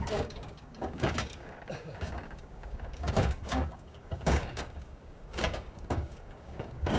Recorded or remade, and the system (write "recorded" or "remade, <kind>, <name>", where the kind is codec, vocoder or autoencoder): remade, codec, DAC